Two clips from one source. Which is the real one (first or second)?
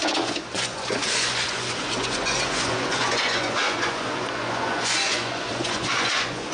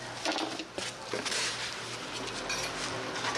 second